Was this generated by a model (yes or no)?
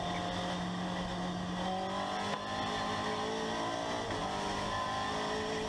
no